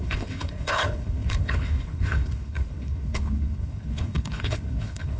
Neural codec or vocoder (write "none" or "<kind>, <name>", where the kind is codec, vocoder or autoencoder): codec, HILCodec